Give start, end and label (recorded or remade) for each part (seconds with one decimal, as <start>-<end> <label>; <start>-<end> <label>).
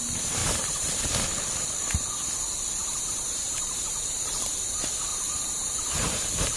0.0-0.4 recorded; 0.4-1.0 remade; 1.0-2.8 recorded; 2.8-4.4 remade; 4.4-5.1 recorded; 5.1-6.6 remade